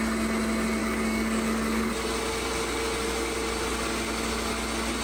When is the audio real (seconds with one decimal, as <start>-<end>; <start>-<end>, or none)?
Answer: 0.0-0.8; 1.9-5.0